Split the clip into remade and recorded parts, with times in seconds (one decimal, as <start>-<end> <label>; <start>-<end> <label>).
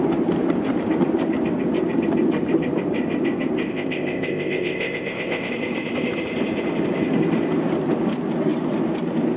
0.0-3.7 recorded; 3.7-5.5 remade; 5.5-9.4 recorded